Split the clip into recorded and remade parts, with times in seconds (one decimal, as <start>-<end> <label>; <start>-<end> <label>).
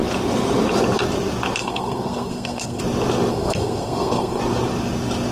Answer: 0.0-1.6 recorded; 1.6-2.8 remade; 2.8-3.3 recorded; 3.3-4.4 remade; 4.4-5.3 recorded